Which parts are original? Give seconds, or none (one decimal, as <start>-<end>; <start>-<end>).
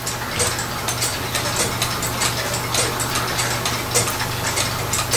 0.0-5.2